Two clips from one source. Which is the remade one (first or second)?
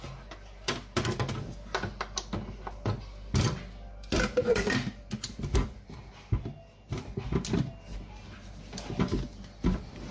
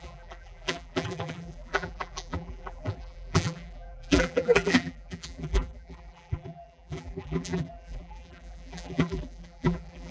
second